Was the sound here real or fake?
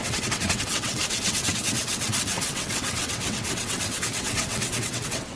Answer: fake